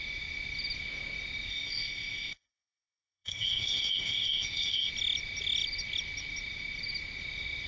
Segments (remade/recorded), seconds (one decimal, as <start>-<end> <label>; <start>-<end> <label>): 0.0-1.5 recorded; 1.5-4.9 remade; 4.9-7.7 recorded